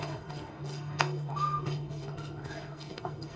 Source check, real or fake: fake